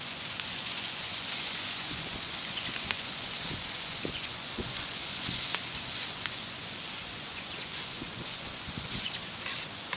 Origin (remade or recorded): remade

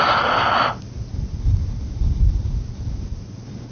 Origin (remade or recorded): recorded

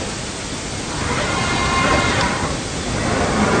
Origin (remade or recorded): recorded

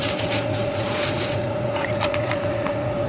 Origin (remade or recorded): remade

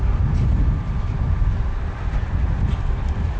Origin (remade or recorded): recorded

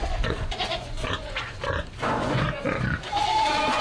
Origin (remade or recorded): remade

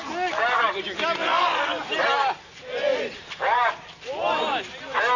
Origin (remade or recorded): recorded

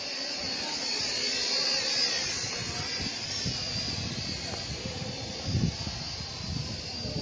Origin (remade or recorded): recorded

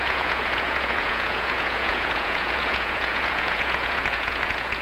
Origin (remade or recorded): remade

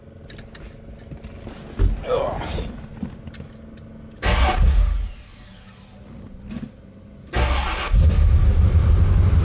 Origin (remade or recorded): recorded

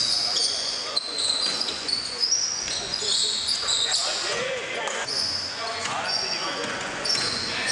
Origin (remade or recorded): remade